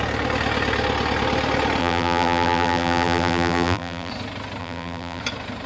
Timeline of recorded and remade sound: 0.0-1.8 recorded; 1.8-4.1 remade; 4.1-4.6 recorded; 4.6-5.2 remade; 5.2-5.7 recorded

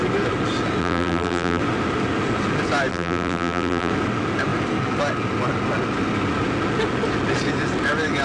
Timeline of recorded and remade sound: 0.0-0.8 recorded; 0.8-1.6 remade; 1.6-2.9 recorded; 2.9-3.9 remade; 3.9-8.2 recorded

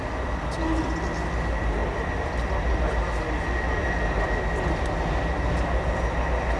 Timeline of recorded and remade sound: 0.0-1.8 recorded; 1.8-2.8 remade; 2.8-3.8 recorded; 3.8-4.4 remade; 4.4-6.6 recorded